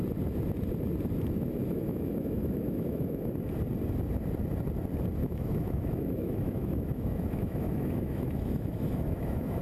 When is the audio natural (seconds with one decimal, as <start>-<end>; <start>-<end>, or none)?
0.0-1.5; 3.3-5.2